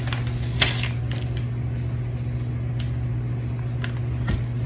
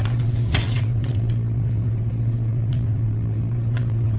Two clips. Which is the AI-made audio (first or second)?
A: second